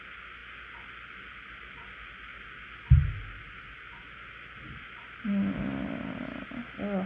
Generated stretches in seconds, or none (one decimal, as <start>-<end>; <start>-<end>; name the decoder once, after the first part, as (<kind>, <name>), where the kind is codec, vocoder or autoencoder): none